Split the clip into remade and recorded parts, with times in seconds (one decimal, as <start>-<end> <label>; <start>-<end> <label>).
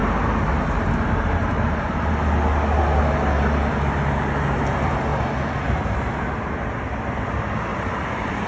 0.0-2.1 remade; 2.1-5.1 recorded; 5.1-6.2 remade; 6.2-7.7 recorded; 7.7-8.5 remade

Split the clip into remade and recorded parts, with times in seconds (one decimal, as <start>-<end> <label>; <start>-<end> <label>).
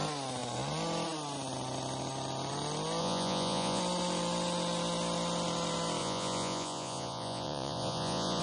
0.0-3.0 recorded; 3.0-3.8 remade; 3.8-6.0 recorded; 6.0-8.4 remade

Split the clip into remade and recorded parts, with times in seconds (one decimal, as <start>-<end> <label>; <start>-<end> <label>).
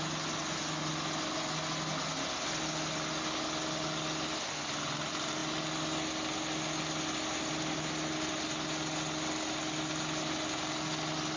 0.0-11.4 recorded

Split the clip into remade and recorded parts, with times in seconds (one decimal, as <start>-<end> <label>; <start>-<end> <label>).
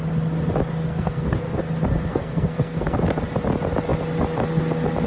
0.0-0.8 recorded; 0.8-1.6 remade; 1.6-2.1 recorded; 2.1-3.0 remade; 3.0-5.1 recorded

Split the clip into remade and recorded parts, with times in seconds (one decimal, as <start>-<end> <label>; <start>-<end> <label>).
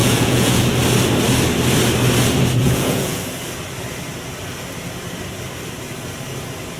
0.0-0.6 remade; 0.6-2.6 recorded; 2.6-3.2 remade; 3.2-6.8 recorded